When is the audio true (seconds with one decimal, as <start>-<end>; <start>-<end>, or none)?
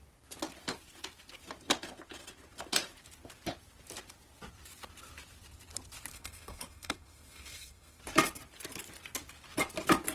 0.0-6.1; 8.0-10.1